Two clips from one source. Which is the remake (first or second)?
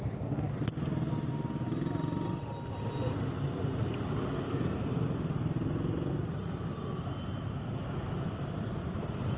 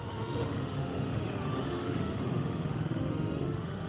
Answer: second